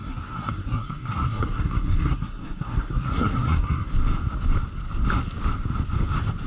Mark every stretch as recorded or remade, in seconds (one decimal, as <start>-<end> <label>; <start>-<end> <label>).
0.0-3.9 remade; 3.9-6.5 recorded